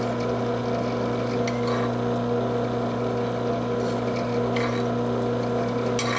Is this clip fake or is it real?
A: real